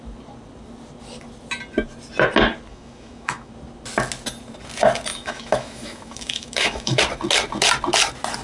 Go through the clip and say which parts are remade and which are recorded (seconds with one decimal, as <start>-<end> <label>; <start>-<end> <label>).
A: 0.0-2.7 recorded; 2.7-3.5 remade; 3.5-5.1 recorded; 5.1-7.0 remade; 7.0-8.4 recorded